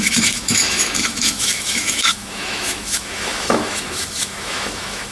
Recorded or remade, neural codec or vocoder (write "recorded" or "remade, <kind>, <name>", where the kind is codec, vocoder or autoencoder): remade, autoencoder, DAC-VAE